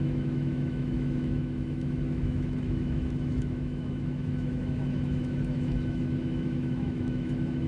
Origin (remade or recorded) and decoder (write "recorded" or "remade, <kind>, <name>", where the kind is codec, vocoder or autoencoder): remade, autoencoder, DAC-VAE